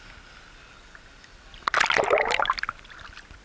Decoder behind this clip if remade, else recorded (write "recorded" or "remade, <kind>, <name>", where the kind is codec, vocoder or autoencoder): recorded